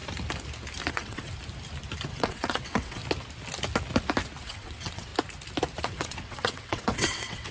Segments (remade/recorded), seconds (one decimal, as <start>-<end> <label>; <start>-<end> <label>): 0.0-0.9 recorded; 0.9-1.3 remade; 1.3-2.1 recorded; 2.1-3.0 remade; 3.0-4.4 recorded; 4.4-5.1 remade; 5.1-5.8 recorded; 5.8-7.5 remade